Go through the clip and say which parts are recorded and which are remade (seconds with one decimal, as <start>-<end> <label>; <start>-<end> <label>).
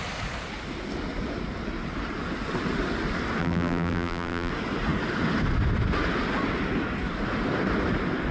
0.0-3.4 recorded; 3.4-4.5 remade; 4.5-8.3 recorded